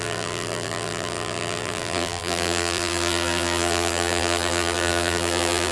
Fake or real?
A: fake